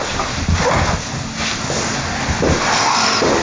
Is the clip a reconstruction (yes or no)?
no